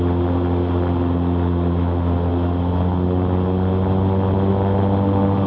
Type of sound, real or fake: real